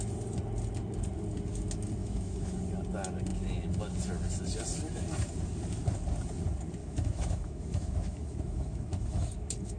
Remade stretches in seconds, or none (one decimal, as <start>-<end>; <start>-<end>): 2.0-2.6; 6.8-9.8